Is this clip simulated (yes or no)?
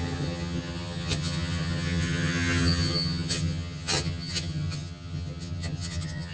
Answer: yes